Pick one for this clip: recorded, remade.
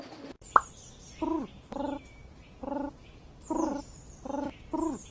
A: recorded